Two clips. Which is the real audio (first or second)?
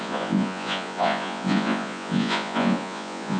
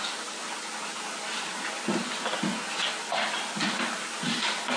second